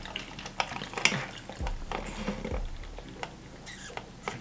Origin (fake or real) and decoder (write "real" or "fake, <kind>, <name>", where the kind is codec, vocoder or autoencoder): real